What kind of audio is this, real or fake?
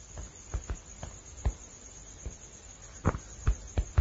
real